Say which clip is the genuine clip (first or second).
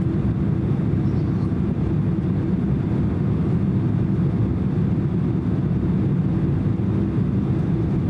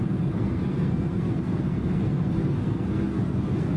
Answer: first